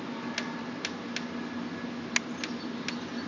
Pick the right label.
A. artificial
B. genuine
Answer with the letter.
B